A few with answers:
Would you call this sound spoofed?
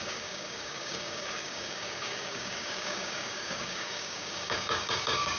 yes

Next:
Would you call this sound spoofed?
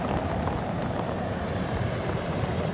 yes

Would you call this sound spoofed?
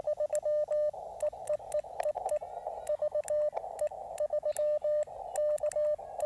no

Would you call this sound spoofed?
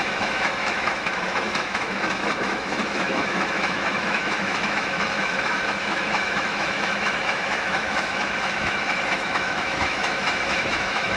yes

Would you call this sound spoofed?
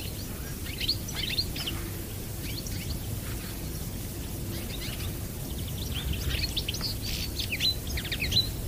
no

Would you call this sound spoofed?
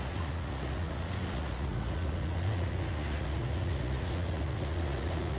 yes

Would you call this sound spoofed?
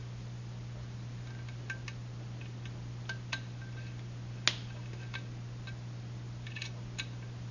no